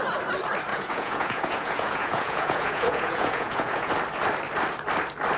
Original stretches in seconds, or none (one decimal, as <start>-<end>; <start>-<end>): 0.0-0.7; 3.9-5.4